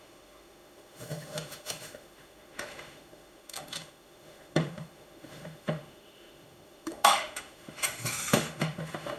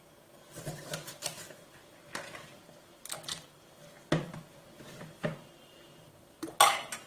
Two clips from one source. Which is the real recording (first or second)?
second